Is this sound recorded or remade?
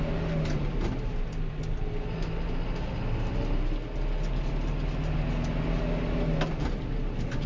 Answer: recorded